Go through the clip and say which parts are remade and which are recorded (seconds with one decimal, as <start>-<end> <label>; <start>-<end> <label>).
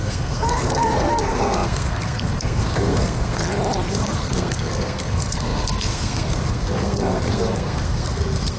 0.0-3.4 remade; 3.4-3.9 recorded; 3.9-8.6 remade